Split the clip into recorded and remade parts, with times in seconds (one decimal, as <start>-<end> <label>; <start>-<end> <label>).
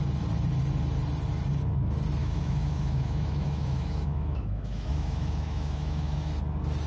0.0-2.2 recorded; 2.2-6.3 remade; 6.3-6.9 recorded